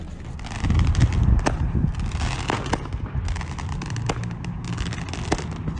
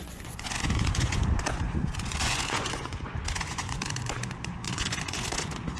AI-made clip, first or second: second